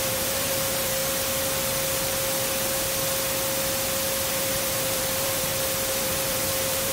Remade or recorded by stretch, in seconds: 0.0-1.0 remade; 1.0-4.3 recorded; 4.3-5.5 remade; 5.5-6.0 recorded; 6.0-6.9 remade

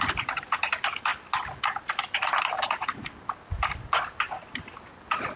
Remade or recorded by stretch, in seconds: 0.0-5.4 recorded